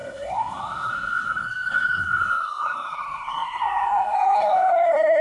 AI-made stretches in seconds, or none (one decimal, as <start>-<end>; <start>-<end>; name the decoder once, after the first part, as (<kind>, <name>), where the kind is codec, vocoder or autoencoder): 0.0-5.2 (codec, SNAC)